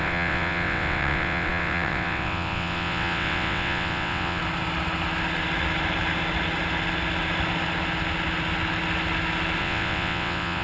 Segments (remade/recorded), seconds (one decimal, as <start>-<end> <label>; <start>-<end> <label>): 0.0-4.4 remade; 4.4-9.6 recorded; 9.6-10.6 remade